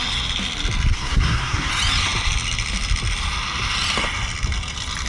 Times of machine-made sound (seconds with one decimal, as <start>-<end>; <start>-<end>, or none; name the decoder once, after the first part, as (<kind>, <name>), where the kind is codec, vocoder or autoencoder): 0.9-1.7 (codec, SNAC)